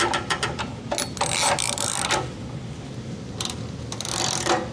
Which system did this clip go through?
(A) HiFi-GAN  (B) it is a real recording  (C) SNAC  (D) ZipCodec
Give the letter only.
B